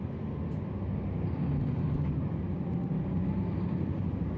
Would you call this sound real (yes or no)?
yes